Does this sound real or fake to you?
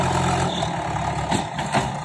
real